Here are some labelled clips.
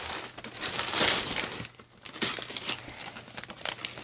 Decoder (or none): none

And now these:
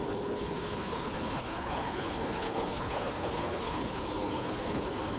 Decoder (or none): codec, HILCodec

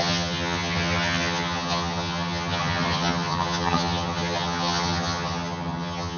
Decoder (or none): vocoder, HiFi-GAN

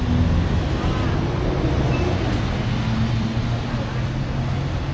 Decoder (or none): none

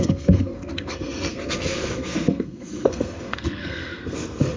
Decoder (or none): codec, SNAC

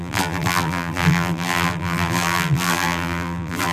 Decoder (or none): vocoder, BigVGAN v2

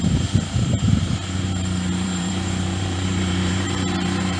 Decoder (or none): vocoder, BigVGAN v2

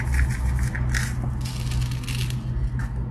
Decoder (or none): none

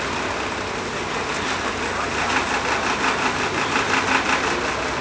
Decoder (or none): none